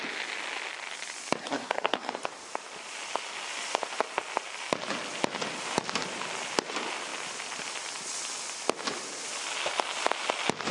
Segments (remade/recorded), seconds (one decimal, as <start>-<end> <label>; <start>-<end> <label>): 0.0-1.4 recorded; 1.4-2.1 remade; 2.1-10.7 recorded